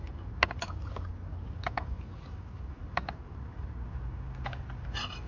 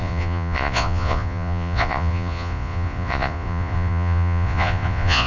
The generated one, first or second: second